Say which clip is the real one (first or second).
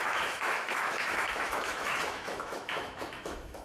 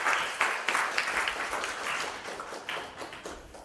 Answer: second